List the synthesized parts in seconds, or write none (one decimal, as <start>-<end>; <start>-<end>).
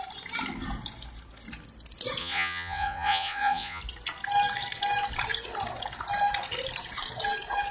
2.2-3.8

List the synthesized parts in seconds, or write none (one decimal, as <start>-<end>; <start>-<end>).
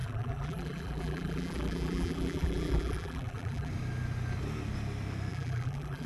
0.0-3.7; 5.3-6.1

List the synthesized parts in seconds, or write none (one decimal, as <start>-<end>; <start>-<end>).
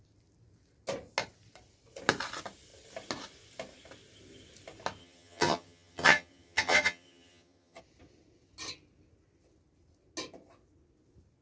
5.0-7.8